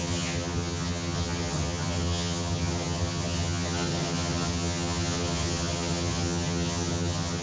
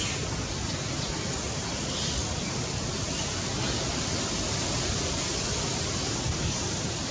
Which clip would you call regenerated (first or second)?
first